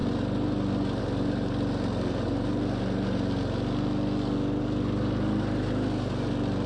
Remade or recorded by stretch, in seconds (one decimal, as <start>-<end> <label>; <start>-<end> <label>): 0.0-6.7 recorded